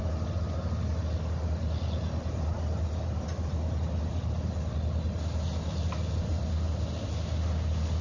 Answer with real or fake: real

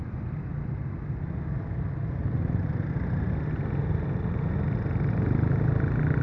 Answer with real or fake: real